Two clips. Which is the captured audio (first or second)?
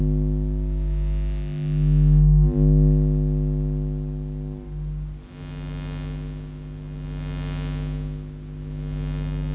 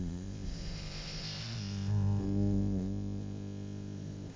first